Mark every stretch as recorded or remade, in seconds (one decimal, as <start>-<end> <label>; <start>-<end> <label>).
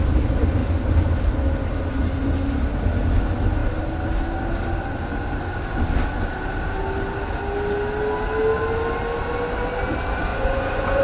0.0-10.3 recorded; 10.3-11.0 remade